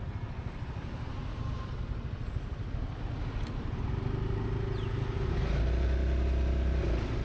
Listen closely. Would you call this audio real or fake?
real